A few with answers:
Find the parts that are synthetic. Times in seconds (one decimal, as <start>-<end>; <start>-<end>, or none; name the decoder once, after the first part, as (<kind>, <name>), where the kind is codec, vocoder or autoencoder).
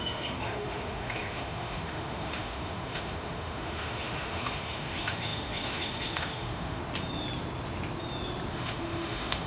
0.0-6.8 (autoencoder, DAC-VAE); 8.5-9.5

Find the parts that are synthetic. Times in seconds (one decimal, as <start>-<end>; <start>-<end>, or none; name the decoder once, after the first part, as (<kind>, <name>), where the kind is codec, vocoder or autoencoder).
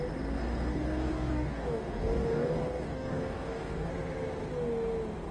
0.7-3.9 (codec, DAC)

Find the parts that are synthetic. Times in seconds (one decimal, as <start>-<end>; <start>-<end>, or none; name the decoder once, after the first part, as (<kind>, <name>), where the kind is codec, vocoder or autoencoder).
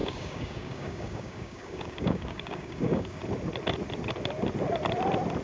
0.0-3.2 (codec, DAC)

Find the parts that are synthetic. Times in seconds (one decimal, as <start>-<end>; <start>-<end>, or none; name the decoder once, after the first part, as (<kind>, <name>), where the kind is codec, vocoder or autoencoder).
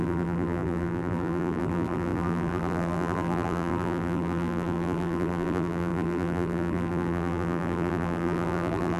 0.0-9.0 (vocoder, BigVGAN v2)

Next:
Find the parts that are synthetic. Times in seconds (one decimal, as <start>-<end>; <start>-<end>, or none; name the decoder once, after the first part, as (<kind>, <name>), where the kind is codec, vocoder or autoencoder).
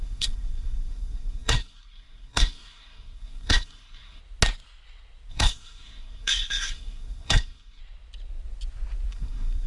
0.0-4.2 (codec, SNAC); 5.3-7.8; 9.1-9.7